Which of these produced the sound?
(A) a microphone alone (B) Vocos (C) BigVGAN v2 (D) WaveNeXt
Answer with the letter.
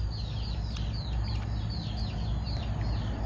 A